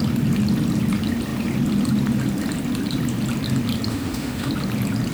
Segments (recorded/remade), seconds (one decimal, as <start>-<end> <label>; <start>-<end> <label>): 0.0-3.9 recorded; 3.9-4.5 remade; 4.5-5.1 recorded